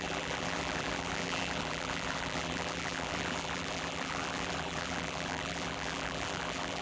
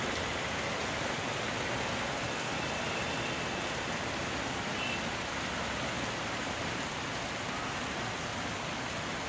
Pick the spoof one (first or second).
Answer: first